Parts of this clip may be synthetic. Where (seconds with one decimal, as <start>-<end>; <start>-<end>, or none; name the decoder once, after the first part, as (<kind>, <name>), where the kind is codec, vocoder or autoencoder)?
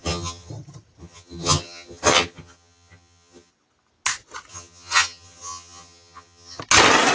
0.0-0.5 (vocoder, HiFi-GAN); 1.0-3.5; 4.5-6.6